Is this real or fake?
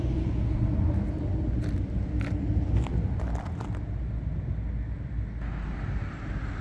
real